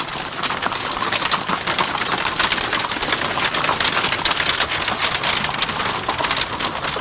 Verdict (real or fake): real